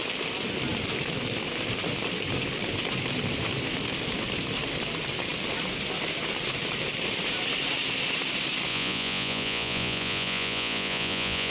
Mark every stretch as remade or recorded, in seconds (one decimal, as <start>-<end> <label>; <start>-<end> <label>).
0.0-8.7 recorded; 8.7-11.5 remade